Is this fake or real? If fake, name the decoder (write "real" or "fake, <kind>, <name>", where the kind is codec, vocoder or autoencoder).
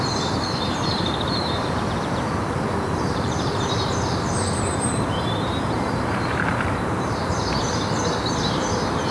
fake, vocoder, BigVGAN v2